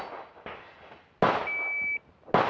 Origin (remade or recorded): recorded